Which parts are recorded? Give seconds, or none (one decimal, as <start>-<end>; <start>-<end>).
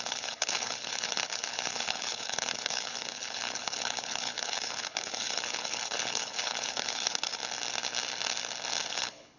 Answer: 7.4-8.9